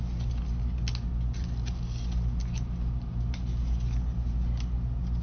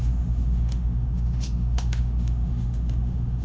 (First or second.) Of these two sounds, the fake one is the second